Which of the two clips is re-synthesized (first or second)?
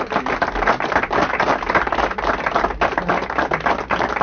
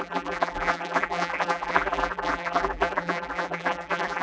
second